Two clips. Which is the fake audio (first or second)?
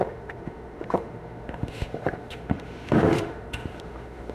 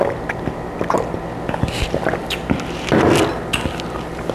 first